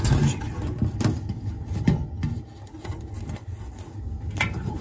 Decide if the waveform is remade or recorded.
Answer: recorded